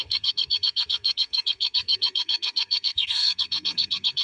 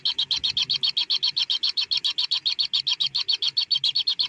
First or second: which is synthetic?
first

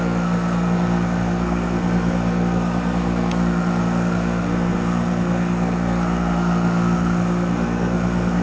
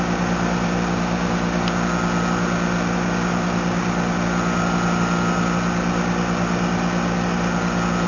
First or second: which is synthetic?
first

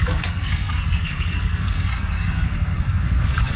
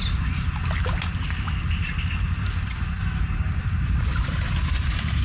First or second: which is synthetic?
first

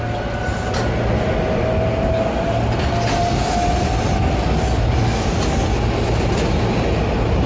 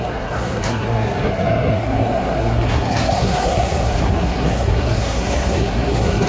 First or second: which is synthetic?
second